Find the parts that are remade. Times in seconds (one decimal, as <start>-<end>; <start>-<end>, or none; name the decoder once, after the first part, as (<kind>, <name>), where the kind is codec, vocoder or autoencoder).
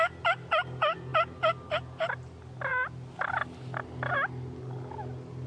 none